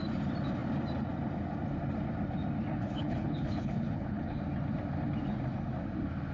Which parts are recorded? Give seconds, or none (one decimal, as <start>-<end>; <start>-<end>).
0.0-2.7; 4.4-6.3